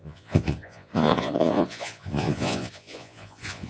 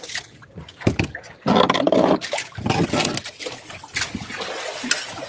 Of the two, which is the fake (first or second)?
first